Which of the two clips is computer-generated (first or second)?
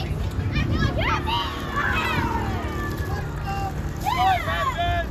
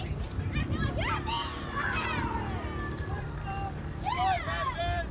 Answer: second